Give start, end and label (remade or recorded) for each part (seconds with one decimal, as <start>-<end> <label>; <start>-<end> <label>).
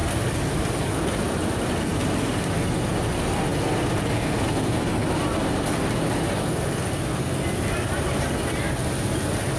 0.0-9.6 recorded